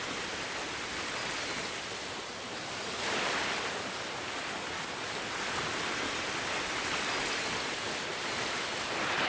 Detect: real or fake real